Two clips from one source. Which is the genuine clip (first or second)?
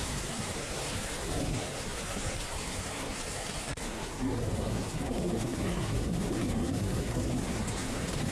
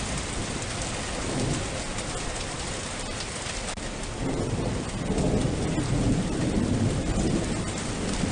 second